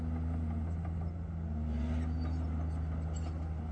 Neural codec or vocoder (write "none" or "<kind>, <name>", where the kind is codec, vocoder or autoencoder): none